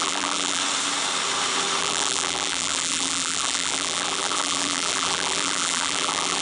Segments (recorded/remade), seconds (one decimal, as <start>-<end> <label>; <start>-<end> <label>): 0.0-0.6 remade; 0.6-1.8 recorded; 1.8-6.4 remade